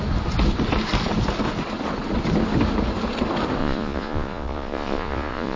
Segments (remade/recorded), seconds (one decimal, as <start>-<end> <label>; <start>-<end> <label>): 0.0-3.6 recorded; 3.6-5.6 remade